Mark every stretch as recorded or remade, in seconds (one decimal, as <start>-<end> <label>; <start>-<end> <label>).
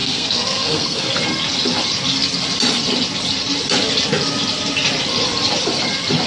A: 0.0-1.1 remade; 1.1-6.3 recorded